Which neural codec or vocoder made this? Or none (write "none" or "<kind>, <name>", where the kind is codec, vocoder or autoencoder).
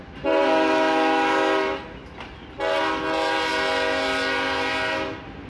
none